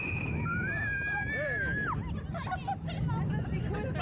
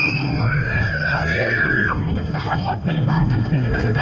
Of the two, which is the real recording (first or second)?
first